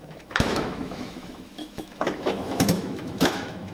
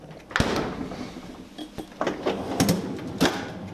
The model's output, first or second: first